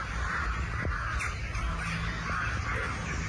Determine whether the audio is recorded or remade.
recorded